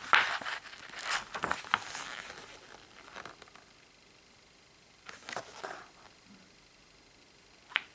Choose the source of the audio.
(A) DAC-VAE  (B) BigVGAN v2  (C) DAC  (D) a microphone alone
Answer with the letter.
D